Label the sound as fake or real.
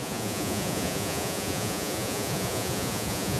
fake